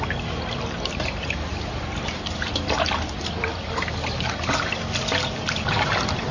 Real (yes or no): yes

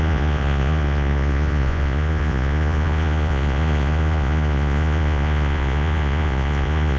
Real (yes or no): no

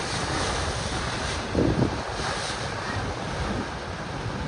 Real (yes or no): yes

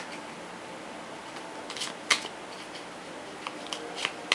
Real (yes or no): yes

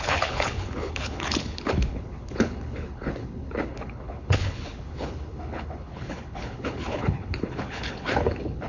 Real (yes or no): no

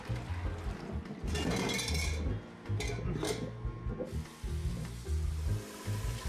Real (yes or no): yes